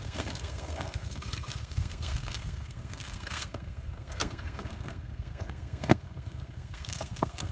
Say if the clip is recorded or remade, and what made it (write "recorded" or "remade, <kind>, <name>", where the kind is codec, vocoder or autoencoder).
remade, codec, SNAC